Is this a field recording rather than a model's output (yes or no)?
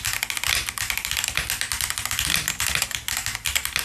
yes